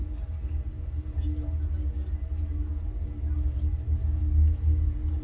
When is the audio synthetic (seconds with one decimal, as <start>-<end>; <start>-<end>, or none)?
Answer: none